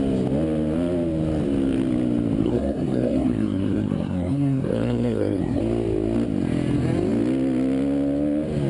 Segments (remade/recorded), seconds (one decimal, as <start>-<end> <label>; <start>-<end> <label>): 0.0-2.4 recorded; 2.4-5.6 remade; 5.6-8.7 recorded